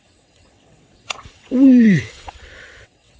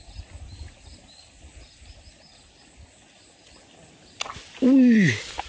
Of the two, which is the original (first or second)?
second